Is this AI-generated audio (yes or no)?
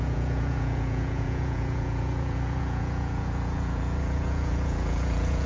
yes